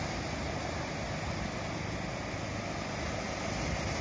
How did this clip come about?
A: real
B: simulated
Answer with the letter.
A